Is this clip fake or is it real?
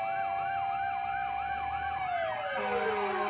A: real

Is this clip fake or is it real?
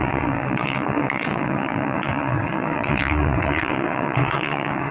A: fake